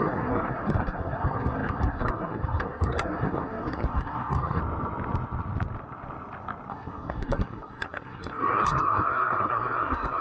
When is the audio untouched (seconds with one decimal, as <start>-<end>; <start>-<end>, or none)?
4.6-6.7